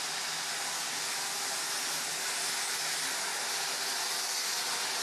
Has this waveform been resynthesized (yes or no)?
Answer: no